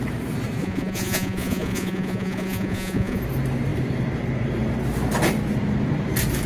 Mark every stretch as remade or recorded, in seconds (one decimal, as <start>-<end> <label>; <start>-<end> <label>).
0.0-0.6 recorded; 0.6-3.2 remade; 3.2-6.5 recorded